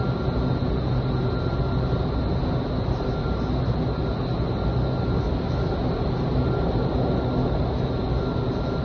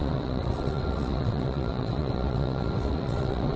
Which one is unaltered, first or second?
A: first